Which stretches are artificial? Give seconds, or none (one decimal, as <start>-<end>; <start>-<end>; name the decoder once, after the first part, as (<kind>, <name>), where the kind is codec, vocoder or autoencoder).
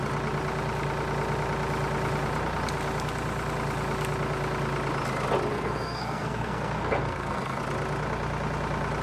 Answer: 5.5-7.6 (codec, SNAC)